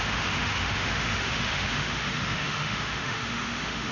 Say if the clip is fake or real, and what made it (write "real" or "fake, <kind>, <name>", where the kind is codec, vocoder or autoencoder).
fake, autoencoder, DAC-VAE